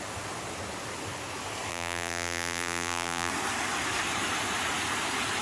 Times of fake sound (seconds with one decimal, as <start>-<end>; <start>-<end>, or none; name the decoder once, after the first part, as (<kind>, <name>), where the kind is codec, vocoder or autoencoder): 1.7-3.3 (vocoder, BigVGAN v2)